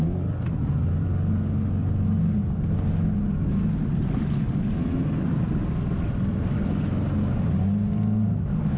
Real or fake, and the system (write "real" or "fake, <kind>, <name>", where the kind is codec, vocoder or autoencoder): real